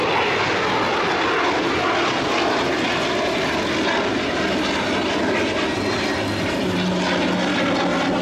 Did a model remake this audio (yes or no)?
no